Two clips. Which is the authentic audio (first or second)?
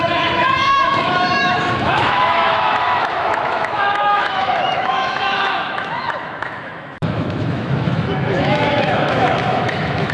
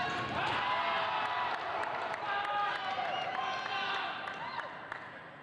second